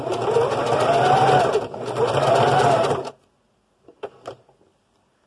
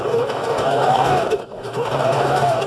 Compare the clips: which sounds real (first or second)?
first